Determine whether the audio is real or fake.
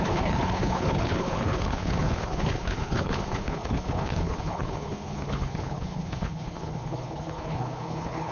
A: fake